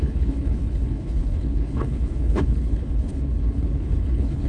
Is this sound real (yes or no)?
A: no